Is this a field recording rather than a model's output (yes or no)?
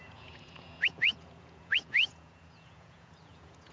no